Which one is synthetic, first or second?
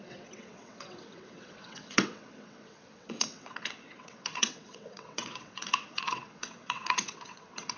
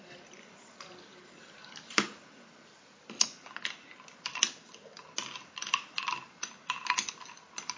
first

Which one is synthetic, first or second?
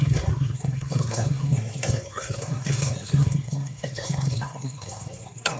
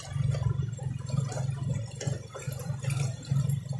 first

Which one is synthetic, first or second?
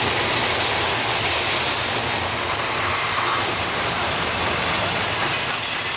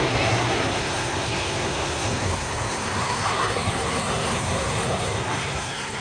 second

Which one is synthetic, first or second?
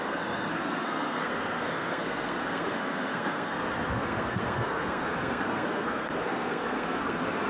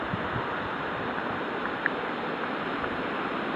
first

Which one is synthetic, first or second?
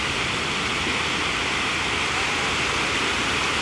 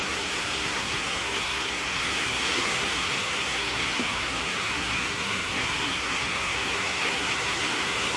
second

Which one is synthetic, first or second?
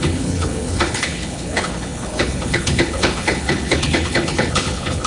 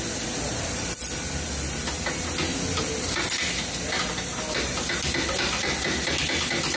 first